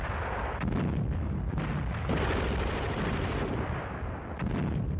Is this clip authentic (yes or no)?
yes